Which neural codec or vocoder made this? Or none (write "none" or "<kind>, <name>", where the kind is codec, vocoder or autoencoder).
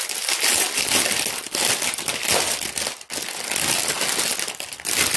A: none